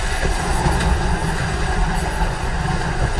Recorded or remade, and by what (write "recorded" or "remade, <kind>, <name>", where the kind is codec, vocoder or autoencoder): remade, vocoder, Vocos